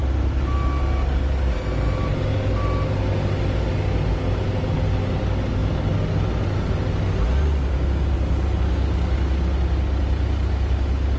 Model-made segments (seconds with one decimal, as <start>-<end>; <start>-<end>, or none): none